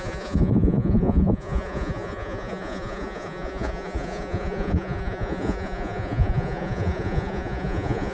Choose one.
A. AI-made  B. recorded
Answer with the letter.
A